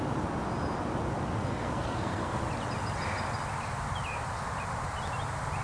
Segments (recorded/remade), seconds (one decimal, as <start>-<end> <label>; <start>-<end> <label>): 0.0-1.4 recorded; 1.4-2.4 remade; 2.4-5.6 recorded